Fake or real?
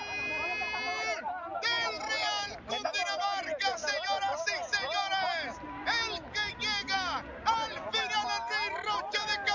real